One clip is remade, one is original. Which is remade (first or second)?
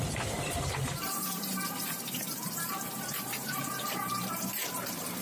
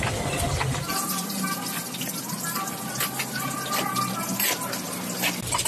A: first